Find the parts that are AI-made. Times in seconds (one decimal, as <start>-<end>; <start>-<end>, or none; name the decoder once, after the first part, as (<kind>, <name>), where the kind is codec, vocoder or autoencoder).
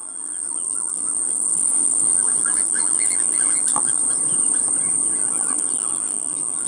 0.0-4.0 (vocoder, BigVGAN v2); 5.2-6.7